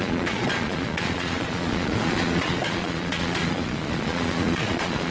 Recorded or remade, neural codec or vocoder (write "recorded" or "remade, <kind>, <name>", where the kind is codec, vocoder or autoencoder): remade, vocoder, Vocos